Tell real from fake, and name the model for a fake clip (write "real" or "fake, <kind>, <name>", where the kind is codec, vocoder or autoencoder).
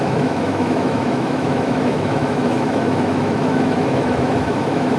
fake, autoencoder, DAC-VAE